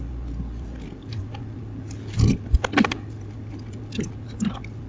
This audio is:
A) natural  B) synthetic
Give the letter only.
A